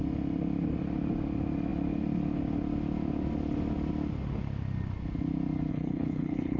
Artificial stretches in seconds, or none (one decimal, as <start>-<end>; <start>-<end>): 5.7-6.6